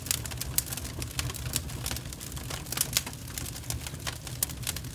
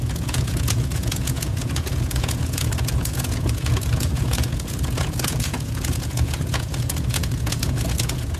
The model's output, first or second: second